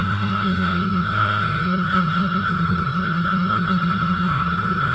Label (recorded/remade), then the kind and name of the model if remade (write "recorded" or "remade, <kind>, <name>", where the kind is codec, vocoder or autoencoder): remade, codec, SNAC